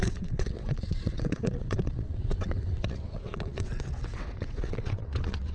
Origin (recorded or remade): remade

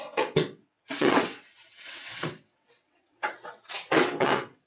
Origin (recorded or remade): remade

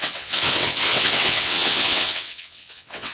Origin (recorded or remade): remade